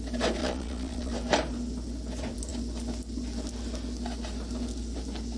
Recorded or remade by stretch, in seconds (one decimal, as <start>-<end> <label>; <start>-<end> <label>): 0.0-0.4 recorded; 0.4-1.1 remade; 1.1-5.4 recorded